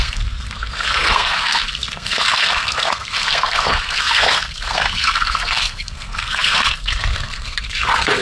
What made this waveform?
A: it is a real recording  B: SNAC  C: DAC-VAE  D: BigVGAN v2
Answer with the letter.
B